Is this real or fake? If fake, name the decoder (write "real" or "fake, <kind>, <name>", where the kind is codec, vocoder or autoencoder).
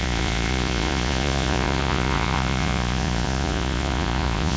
fake, vocoder, Vocos